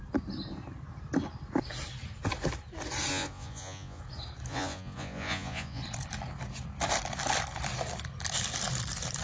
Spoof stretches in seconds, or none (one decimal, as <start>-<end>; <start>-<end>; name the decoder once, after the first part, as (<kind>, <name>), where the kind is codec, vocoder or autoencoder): 3.1-4.0 (vocoder, Vocos); 4.5-5.8